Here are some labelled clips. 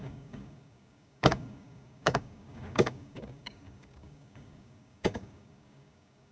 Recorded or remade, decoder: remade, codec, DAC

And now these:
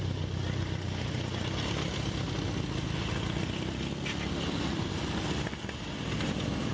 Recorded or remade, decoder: recorded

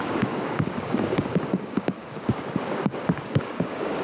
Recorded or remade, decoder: remade, codec, DAC